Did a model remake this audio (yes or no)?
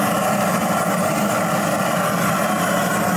no